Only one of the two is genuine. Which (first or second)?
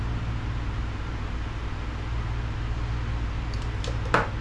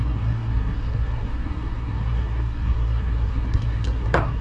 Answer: first